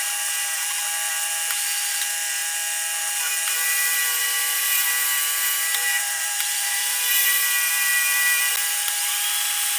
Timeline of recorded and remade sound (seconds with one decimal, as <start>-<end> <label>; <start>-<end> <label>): 0.0-5.9 recorded; 5.9-7.1 remade; 7.1-9.8 recorded